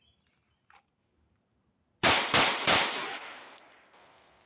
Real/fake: real